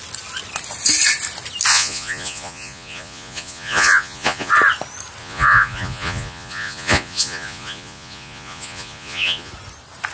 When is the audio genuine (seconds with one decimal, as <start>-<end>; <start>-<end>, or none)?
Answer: 0.0-1.7; 4.5-5.2; 9.5-10.1

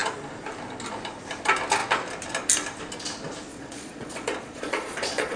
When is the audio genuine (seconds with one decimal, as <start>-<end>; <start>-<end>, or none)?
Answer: 0.0-3.5

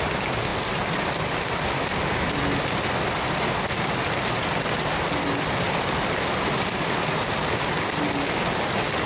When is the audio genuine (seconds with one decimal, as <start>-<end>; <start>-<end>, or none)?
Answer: 0.0-9.1

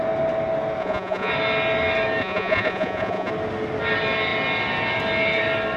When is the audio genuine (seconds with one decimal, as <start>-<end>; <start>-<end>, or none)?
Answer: 0.0-0.8; 1.3-2.2; 3.3-5.8

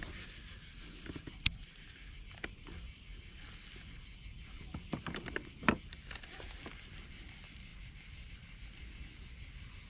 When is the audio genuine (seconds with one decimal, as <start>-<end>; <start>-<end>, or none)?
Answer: 0.0-9.9

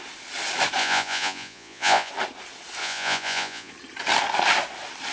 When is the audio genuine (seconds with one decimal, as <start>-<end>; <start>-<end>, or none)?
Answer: 0.0-0.8; 2.1-2.8; 3.7-5.1

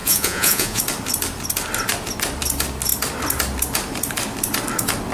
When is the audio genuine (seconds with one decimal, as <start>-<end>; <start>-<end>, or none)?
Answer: 0.8-5.1

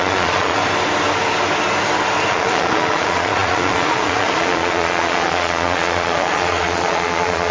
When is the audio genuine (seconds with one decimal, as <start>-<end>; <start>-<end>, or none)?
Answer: 0.6-2.3